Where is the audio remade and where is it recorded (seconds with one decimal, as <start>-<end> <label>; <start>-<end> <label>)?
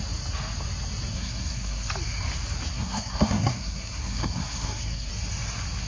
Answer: 0.0-1.1 recorded; 1.1-1.9 remade; 1.9-2.7 recorded; 2.7-5.1 remade; 5.1-5.9 recorded